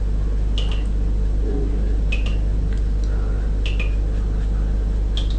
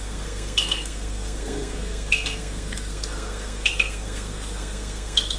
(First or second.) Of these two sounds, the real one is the first